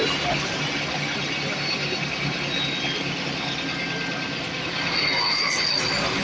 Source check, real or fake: real